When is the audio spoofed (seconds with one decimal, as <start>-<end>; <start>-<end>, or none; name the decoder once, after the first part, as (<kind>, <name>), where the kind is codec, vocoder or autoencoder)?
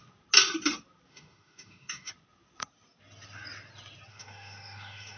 1.1-2.1 (autoencoder, DAC-VAE); 4.1-5.2